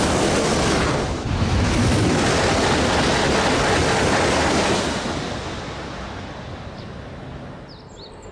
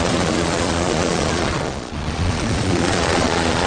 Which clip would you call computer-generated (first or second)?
second